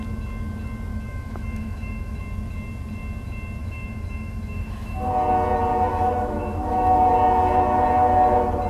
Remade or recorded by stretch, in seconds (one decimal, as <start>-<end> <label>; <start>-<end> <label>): 0.0-0.9 recorded; 0.9-2.2 remade; 2.2-3.6 recorded; 3.6-5.1 remade; 5.1-5.9 recorded; 5.9-7.1 remade; 7.1-8.7 recorded